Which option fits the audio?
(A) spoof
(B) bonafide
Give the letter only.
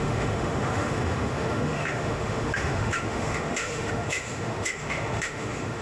A